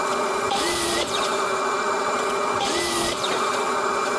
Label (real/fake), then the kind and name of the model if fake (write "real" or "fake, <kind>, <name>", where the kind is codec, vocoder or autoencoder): fake, vocoder, Vocos